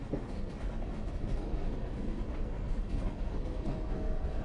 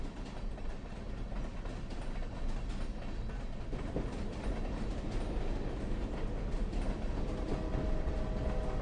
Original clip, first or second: second